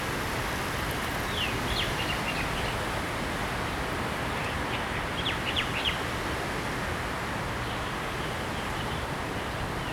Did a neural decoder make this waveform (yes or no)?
no